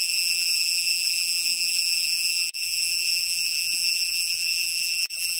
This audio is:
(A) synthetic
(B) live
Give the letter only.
A